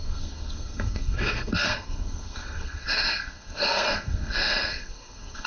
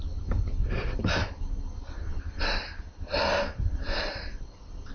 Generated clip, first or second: first